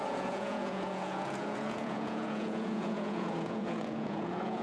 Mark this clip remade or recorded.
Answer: remade